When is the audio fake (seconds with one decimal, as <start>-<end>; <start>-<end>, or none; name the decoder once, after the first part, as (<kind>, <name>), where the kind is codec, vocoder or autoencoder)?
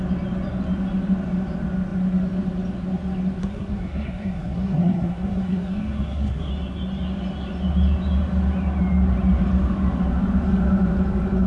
3.4-6.5 (codec, SNAC)